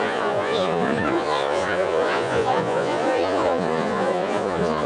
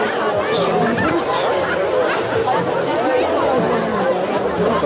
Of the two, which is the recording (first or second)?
second